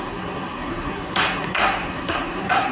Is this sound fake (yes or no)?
yes